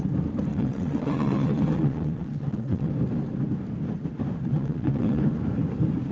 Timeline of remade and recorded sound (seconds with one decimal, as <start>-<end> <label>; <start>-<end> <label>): 0.0-0.5 recorded; 0.5-2.9 remade; 2.9-4.5 recorded; 4.5-5.2 remade; 5.2-6.1 recorded